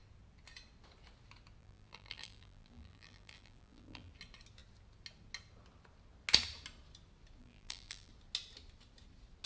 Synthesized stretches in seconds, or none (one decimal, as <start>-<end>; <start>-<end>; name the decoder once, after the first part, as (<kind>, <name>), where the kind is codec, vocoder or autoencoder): 1.6-4.1 (vocoder, BigVGAN v2); 7.4-8.1